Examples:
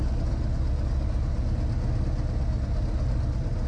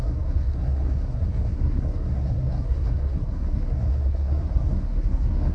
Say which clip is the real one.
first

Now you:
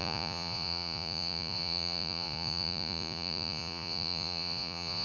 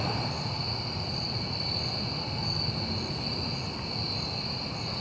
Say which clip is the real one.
second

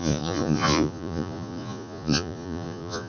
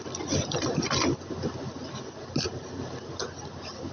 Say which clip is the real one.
second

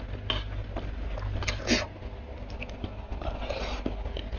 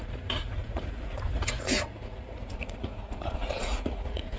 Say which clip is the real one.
first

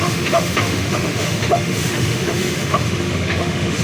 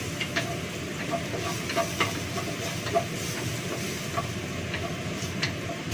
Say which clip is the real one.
second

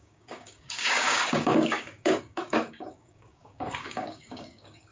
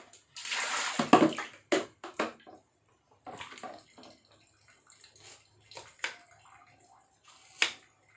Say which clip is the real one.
second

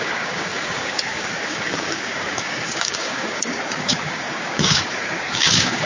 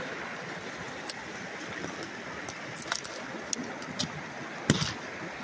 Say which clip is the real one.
second